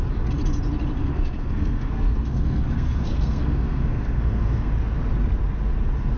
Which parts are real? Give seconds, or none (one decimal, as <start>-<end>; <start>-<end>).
0.0-1.0; 4.7-6.2